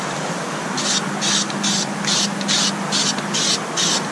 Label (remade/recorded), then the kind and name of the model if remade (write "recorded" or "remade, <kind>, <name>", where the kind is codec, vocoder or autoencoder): recorded